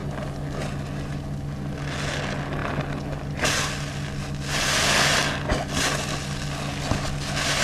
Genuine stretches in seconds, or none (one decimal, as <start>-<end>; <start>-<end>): 0.0-7.6